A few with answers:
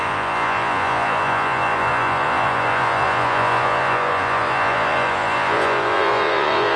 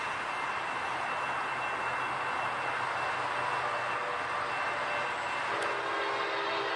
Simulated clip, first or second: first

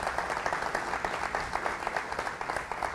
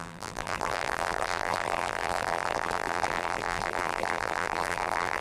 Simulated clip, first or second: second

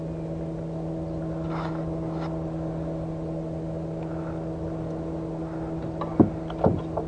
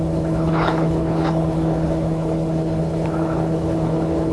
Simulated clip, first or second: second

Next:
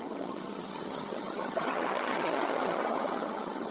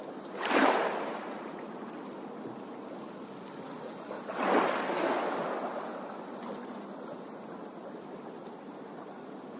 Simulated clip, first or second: first